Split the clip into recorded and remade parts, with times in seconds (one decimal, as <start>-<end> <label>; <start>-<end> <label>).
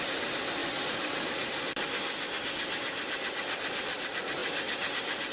0.0-0.6 recorded; 0.6-1.8 remade; 1.8-5.3 recorded